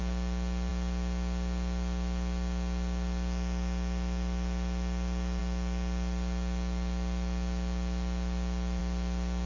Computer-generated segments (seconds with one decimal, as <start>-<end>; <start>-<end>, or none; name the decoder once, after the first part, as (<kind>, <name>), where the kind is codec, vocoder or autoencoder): none